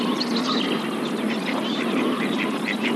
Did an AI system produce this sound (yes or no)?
no